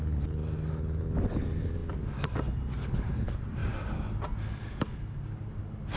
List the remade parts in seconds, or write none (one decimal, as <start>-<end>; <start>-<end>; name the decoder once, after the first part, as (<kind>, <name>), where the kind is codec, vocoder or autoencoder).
none